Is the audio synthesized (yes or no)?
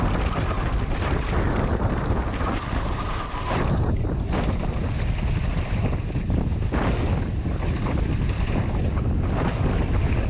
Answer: no